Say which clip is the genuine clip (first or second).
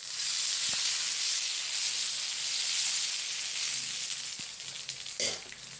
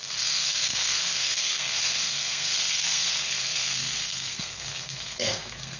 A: first